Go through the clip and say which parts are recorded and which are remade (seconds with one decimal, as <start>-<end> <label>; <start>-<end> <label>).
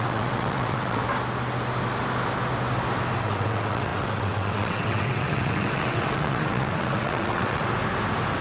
0.0-1.0 remade; 1.0-3.2 recorded; 3.2-7.6 remade; 7.6-8.4 recorded